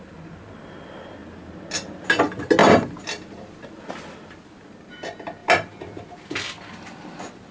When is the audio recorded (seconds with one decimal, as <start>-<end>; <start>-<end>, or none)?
0.0-2.6; 3.6-7.5